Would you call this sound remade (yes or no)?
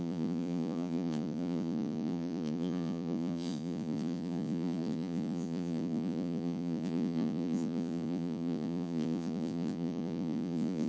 yes